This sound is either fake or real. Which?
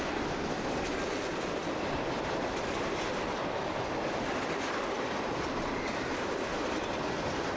real